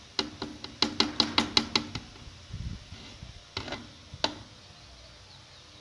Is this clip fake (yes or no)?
no